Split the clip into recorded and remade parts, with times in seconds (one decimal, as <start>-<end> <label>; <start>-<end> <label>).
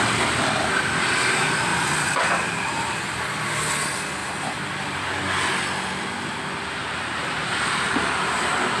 0.0-1.7 recorded; 1.7-3.0 remade; 3.0-4.2 recorded; 4.2-5.1 remade; 5.1-6.8 recorded; 6.8-8.0 remade; 8.0-8.8 recorded